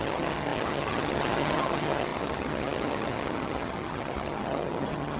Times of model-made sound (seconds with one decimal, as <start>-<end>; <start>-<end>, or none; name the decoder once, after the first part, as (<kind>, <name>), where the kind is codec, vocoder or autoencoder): 0.0-5.2 (vocoder, HiFi-GAN)